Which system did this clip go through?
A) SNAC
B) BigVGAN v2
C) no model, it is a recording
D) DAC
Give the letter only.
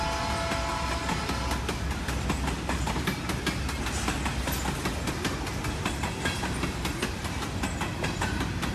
C